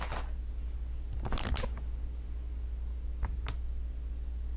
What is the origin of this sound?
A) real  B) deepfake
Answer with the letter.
A